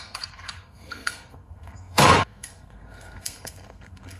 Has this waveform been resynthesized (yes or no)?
yes